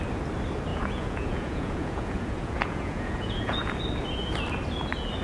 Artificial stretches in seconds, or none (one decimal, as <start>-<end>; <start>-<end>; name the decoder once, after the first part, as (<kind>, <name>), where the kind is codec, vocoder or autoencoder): 0.7-3.8 (vocoder, Vocos)